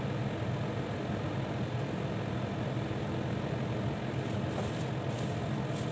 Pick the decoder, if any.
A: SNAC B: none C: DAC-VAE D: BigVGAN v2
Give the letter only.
B